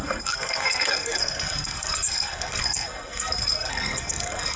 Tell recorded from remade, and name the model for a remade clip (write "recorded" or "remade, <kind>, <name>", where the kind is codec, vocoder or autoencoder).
remade, codec, SNAC